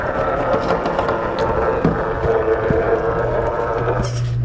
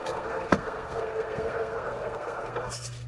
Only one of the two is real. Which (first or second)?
first